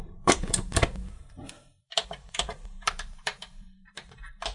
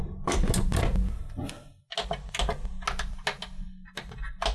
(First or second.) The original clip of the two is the second